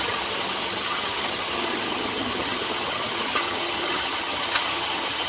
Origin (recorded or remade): remade